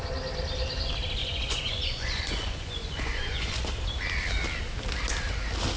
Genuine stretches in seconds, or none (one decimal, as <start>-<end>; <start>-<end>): 0.0-1.2; 3.7-5.8